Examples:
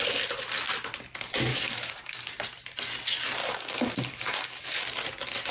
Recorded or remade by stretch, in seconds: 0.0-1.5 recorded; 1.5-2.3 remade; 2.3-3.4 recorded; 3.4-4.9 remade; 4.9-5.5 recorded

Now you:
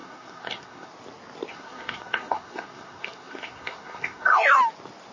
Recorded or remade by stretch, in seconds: 0.0-0.9 remade; 0.9-1.5 recorded; 1.5-4.6 remade; 4.6-5.1 recorded

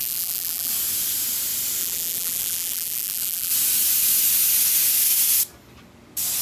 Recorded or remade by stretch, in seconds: 0.0-0.7 remade; 0.7-1.8 recorded; 1.8-3.5 remade; 3.5-6.4 recorded

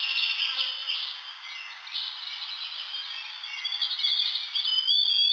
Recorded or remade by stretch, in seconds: 0.0-5.3 recorded

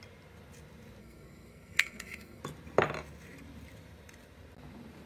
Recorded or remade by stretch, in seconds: 0.0-1.0 recorded; 1.0-2.4 remade; 2.4-5.1 recorded